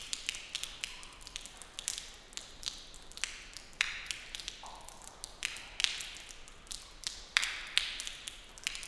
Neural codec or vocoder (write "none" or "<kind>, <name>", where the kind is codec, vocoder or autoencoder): none